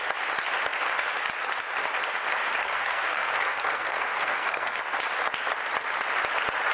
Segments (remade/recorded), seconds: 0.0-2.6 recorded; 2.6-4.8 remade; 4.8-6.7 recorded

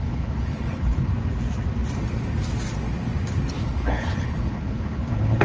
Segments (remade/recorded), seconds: 0.0-1.1 remade; 1.1-3.6 recorded; 3.6-5.4 remade

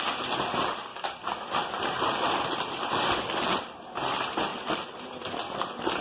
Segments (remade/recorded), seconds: 0.0-0.9 recorded; 0.9-3.6 remade; 3.6-4.5 recorded; 4.5-6.0 remade

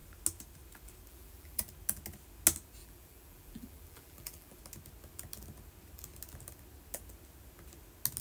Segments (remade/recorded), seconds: 0.0-1.1 recorded; 1.1-1.6 remade; 1.6-2.8 recorded; 2.8-4.6 remade; 4.6-8.2 recorded

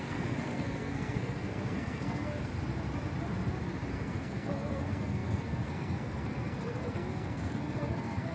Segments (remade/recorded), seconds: 0.0-2.5 remade; 2.5-3.9 recorded; 3.9-8.3 remade

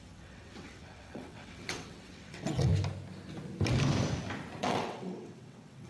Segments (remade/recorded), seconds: 0.0-2.7 remade; 2.7-4.6 recorded; 4.6-5.9 remade